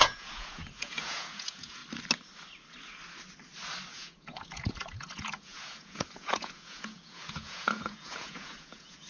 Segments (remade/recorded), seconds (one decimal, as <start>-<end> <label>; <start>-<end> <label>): 0.0-1.8 remade; 1.8-3.9 recorded; 3.9-9.1 remade